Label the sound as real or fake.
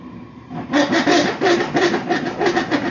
real